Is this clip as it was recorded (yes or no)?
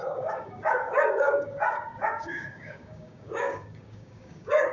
no